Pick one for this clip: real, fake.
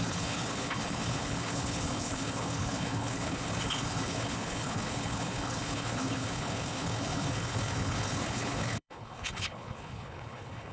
fake